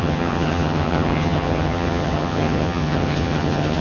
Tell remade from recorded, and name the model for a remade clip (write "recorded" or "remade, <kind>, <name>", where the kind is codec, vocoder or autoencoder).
remade, vocoder, HiFi-GAN